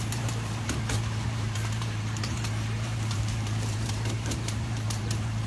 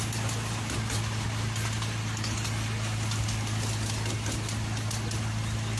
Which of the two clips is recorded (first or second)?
second